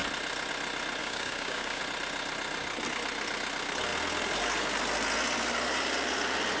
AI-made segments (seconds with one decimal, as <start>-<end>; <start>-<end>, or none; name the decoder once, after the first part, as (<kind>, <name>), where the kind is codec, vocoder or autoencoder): 1.0-1.8 (codec, DAC)